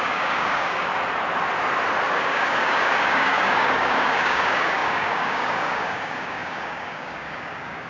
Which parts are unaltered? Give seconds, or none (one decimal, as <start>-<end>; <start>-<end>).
0.9-2.1